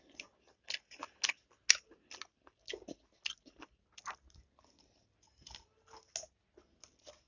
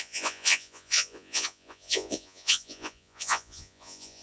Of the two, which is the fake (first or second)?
second